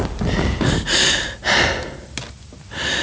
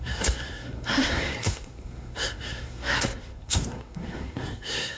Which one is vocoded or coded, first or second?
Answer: second